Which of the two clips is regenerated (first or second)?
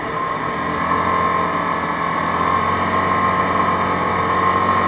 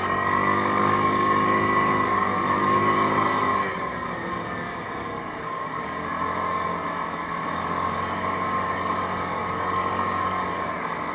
second